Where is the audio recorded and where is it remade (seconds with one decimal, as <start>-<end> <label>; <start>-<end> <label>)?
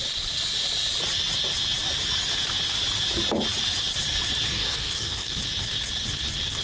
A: 0.0-4.5 recorded; 4.5-5.4 remade; 5.4-6.6 recorded